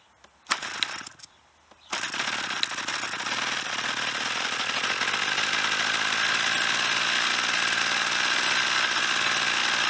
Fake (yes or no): no